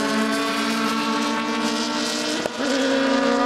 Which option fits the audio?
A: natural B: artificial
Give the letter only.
A